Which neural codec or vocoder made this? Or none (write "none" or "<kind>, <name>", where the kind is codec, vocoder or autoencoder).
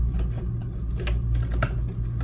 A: none